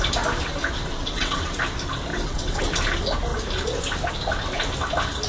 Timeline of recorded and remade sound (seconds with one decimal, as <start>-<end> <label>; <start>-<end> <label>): 0.0-0.9 recorded; 0.9-1.6 remade; 1.6-2.1 recorded; 2.1-2.6 remade; 2.6-5.3 recorded